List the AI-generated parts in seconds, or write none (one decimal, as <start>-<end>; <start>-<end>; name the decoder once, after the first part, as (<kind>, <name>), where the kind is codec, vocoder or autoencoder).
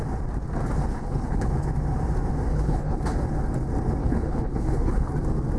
0.9-1.5 (codec, HILCodec); 2.5-3.0; 4.0-5.1